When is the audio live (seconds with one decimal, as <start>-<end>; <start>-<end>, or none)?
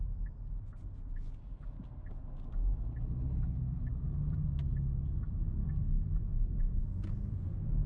0.0-5.6; 6.8-7.9